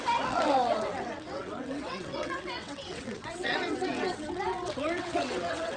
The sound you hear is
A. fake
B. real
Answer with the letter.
A